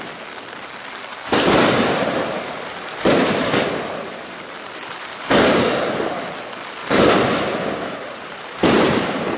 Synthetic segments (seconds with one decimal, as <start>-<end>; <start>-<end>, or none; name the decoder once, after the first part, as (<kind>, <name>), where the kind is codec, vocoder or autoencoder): 1.1-5.7 (vocoder, BigVGAN v2); 6.8-9.0